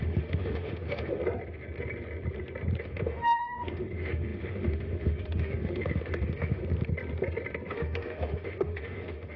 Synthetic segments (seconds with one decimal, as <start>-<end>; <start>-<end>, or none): 0.0-1.2; 2.8-6.6; 7.7-9.4